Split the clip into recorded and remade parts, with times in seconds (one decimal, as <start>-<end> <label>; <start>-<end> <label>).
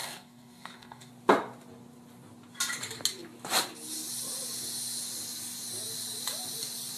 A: 0.0-1.1 remade; 1.1-7.0 recorded